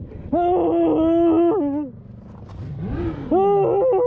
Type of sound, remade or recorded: recorded